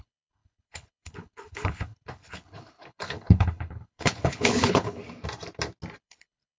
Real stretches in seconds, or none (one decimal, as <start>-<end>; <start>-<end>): 5.0-6.0